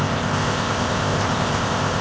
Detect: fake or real fake